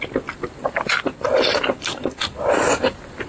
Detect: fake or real real